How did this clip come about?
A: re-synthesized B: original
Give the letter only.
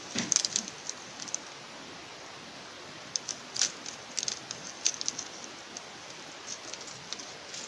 B